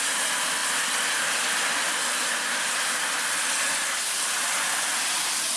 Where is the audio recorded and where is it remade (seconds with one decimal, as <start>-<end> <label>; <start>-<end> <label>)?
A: 0.0-5.6 recorded